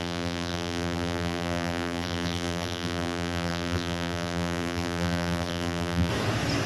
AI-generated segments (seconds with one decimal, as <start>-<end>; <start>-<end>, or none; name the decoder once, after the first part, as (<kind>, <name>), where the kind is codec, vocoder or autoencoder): 0.0-6.1 (vocoder, BigVGAN v2)